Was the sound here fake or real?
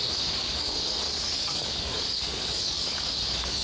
fake